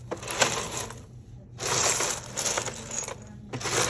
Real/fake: real